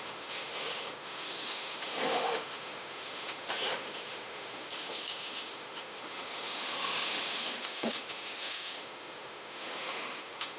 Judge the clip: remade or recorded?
remade